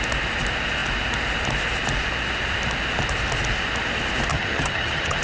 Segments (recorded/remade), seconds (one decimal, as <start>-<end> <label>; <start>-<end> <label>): 0.0-4.3 recorded; 4.3-5.2 remade